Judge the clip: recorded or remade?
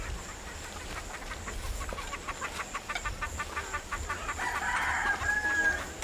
recorded